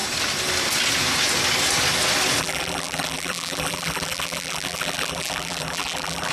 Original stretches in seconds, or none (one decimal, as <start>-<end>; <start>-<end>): 0.0-2.4